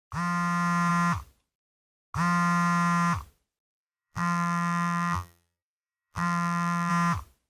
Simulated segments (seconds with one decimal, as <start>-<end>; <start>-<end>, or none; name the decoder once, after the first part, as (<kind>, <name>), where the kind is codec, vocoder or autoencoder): 3.7-6.9 (vocoder, BigVGAN v2)